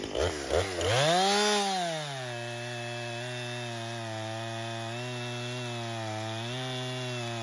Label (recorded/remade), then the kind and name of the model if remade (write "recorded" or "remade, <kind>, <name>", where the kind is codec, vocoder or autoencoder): recorded